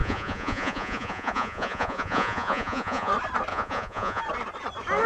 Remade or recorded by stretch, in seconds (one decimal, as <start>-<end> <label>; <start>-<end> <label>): 0.0-3.1 remade; 3.1-3.5 recorded; 3.5-4.2 remade; 4.2-5.1 recorded